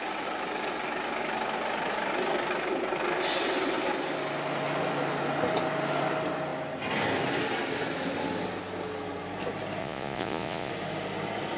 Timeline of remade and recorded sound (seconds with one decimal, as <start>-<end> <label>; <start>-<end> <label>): 0.0-9.8 recorded; 9.8-10.7 remade; 10.7-11.6 recorded